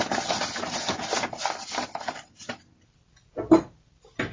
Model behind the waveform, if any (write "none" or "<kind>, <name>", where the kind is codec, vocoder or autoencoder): none